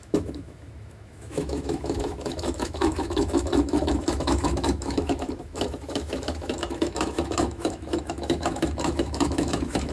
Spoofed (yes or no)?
yes